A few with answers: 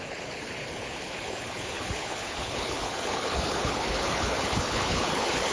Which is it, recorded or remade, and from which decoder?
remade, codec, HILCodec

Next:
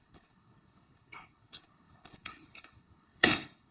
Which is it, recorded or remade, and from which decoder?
remade, codec, HILCodec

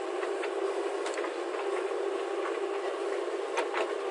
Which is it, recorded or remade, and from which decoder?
recorded